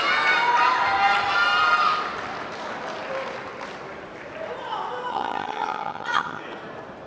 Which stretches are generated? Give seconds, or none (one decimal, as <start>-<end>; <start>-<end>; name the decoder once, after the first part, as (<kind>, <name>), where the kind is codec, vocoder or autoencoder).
5.1-6.4 (vocoder, HiFi-GAN)